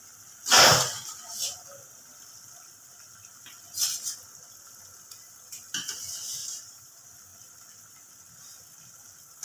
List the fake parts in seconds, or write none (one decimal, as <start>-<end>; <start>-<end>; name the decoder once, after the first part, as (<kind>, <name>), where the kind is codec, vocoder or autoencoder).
6.4-7.1 (vocoder, BigVGAN v2)